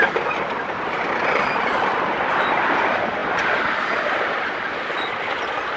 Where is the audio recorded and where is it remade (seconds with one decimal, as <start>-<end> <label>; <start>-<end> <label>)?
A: 0.0-3.2 remade; 3.2-5.8 recorded